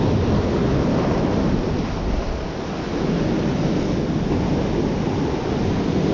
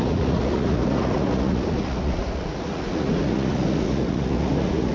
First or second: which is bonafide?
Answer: first